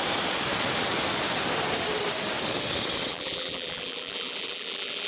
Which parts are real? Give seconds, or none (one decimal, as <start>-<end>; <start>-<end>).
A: 0.0-3.1